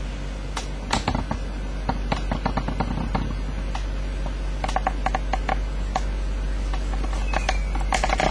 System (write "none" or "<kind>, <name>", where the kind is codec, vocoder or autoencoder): none